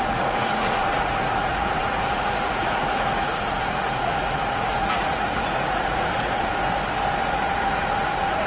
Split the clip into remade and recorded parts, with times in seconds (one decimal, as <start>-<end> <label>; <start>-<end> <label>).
0.0-6.6 remade; 6.6-7.2 recorded; 7.2-8.5 remade